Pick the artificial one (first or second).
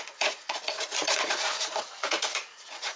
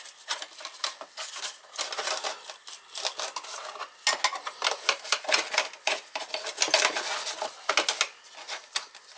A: first